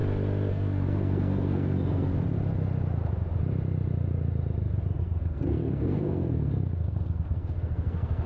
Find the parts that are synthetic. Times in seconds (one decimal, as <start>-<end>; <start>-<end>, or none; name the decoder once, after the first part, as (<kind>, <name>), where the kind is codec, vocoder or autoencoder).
0.5-2.1 (codec, SNAC); 5.0-8.3

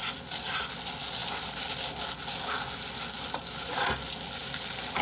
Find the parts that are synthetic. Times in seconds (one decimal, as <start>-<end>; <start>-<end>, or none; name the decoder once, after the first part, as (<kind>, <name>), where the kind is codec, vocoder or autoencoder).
none